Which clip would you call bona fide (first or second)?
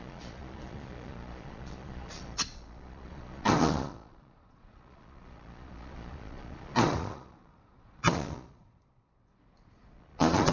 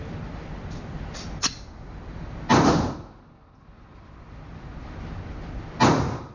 second